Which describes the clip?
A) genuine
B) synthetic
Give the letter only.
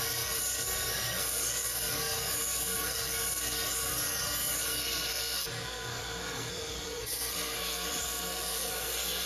B